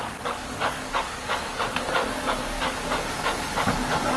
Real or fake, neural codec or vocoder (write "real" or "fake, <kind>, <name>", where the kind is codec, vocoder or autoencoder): fake, codec, DAC